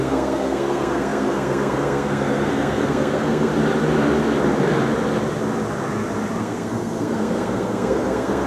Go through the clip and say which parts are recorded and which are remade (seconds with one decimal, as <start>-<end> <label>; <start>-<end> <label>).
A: 0.0-3.5 remade; 3.5-6.4 recorded; 6.4-8.5 remade